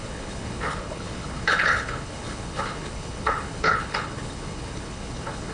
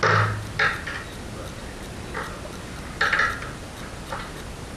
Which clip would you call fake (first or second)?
first